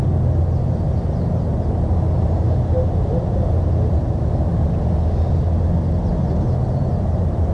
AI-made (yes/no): no